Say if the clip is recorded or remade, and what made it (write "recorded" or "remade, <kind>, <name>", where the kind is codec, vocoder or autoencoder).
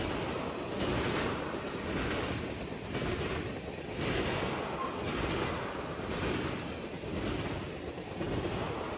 recorded